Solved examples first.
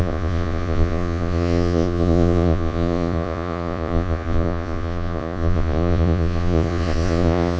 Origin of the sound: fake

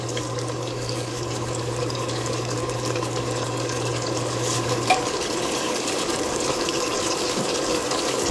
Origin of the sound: fake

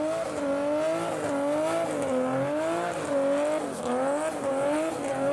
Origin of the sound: real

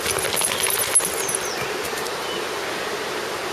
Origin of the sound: real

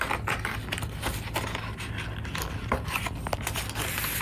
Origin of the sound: real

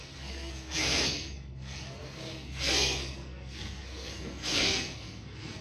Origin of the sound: fake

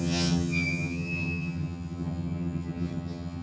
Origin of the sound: fake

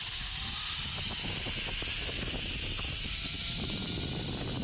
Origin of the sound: fake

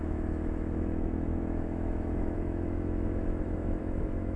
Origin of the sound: fake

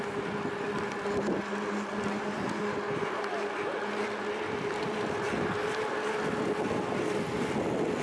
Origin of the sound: real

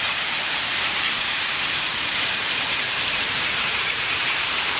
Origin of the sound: fake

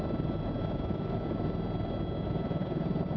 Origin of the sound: real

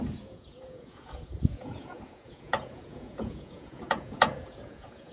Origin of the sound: fake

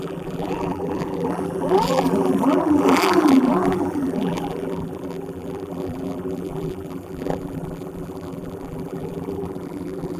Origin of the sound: fake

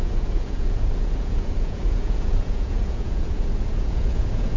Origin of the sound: fake